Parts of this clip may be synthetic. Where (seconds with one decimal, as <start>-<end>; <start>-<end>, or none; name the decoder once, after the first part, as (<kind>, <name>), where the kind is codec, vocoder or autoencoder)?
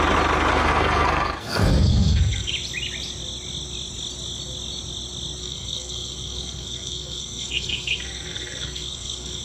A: 0.5-2.5 (codec, SNAC); 5.4-9.4